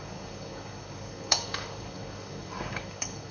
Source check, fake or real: fake